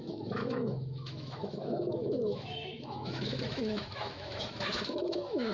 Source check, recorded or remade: remade